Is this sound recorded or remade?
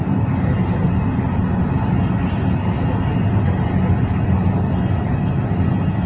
recorded